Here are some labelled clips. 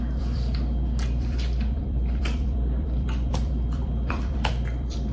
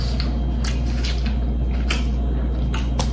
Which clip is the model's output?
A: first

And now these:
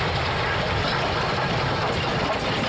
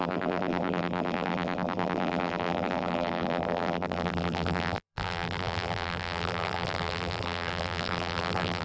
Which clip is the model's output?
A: second